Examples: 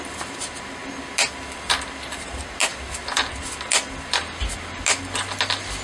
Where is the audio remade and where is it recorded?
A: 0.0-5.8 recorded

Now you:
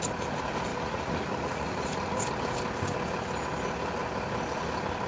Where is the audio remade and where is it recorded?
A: 0.0-0.7 recorded; 0.7-2.2 remade; 2.2-5.1 recorded

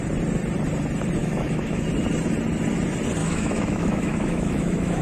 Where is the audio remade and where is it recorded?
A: 0.0-1.2 recorded; 1.2-1.8 remade; 1.8-3.2 recorded; 3.2-5.0 remade

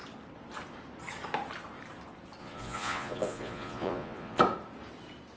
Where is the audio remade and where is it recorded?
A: 0.0-2.4 recorded; 2.4-4.4 remade; 4.4-5.4 recorded

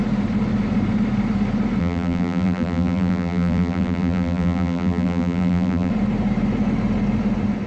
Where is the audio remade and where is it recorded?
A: 0.0-1.8 recorded; 1.8-5.9 remade; 5.9-7.7 recorded